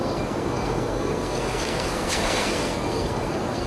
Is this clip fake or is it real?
fake